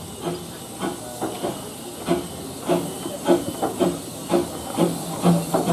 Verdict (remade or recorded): recorded